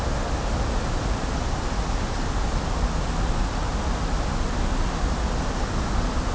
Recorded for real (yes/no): yes